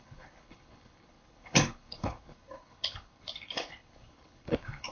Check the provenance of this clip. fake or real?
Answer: fake